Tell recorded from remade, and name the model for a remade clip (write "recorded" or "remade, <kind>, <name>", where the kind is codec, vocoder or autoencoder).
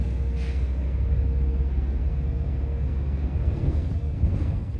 remade, codec, SNAC